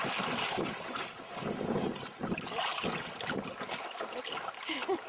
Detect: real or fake real